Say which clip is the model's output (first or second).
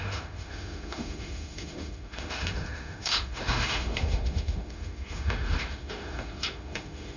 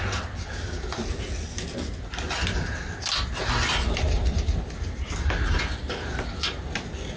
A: first